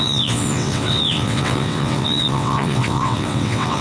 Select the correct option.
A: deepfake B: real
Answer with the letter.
A